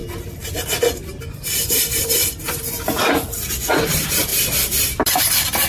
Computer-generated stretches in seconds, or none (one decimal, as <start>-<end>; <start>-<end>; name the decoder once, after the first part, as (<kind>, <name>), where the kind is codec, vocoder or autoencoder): none